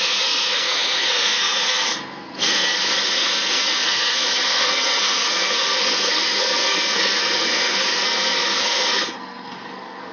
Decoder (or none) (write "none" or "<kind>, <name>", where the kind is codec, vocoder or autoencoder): codec, SNAC